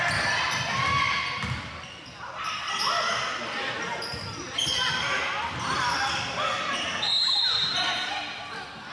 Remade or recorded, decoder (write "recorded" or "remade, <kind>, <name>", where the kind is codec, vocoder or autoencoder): recorded